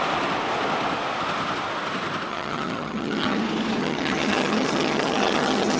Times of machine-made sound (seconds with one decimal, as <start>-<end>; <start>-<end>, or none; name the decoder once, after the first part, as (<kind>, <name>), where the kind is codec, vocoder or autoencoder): 2.3-3.4 (vocoder, HiFi-GAN); 3.8-5.8